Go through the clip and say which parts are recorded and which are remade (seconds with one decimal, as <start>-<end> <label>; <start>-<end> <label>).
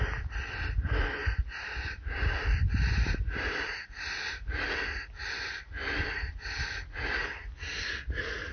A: 0.0-8.5 recorded